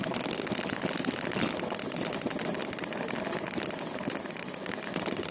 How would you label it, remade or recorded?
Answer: recorded